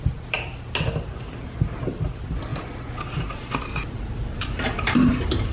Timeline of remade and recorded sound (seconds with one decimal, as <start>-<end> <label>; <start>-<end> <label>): 0.0-5.5 recorded